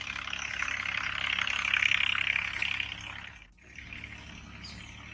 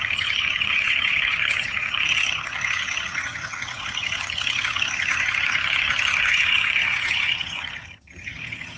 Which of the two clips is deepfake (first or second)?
second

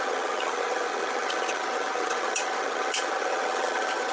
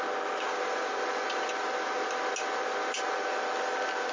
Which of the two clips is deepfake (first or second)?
first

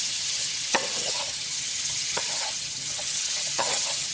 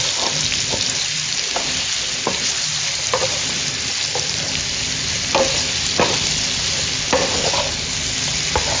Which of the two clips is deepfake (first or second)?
first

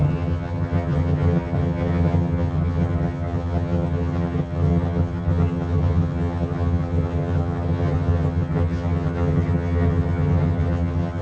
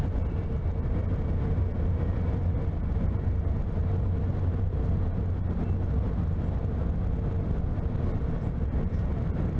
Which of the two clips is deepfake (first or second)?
first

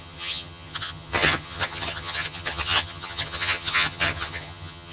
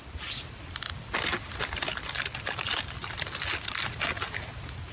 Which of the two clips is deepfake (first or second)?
first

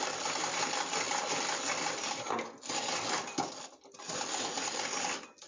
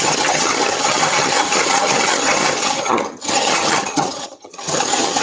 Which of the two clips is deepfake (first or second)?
second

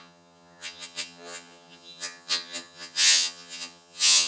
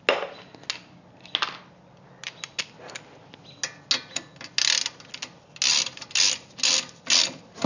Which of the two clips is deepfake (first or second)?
first